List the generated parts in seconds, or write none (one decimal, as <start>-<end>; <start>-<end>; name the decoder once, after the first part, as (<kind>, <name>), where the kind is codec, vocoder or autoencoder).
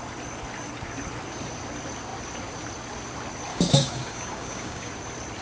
3.5-4.9 (codec, DAC)